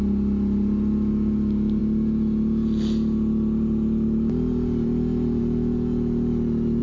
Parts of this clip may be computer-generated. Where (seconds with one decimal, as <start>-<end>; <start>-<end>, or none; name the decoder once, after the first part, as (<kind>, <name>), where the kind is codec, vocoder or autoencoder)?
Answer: none